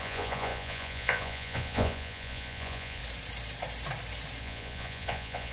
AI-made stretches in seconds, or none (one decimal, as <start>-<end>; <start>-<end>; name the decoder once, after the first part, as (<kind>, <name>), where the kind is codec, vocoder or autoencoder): 0.0-3.0 (vocoder, Vocos); 4.4-5.5